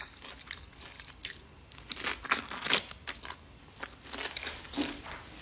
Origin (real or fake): real